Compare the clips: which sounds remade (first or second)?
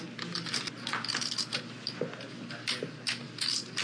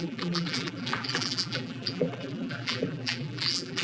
second